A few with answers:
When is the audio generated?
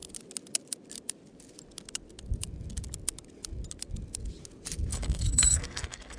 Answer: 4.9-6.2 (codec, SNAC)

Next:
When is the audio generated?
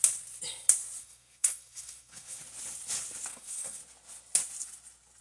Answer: 1.0-2.4 (codec, SNAC); 3.3-3.8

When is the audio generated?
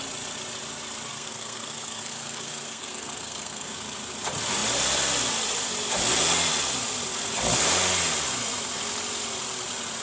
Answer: 1.1-3.7 (codec, SNAC)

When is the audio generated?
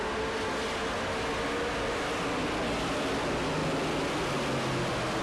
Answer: none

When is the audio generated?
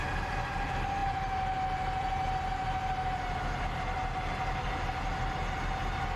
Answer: none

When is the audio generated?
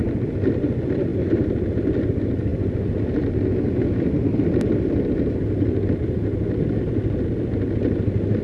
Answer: none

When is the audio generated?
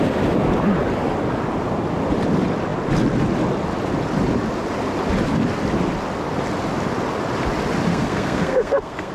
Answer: 7.9-9.1 (codec, SNAC)